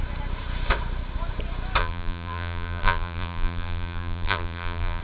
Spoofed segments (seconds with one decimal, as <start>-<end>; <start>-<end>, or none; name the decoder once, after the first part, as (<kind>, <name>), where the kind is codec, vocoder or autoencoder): 1.8-5.0 (vocoder, BigVGAN v2)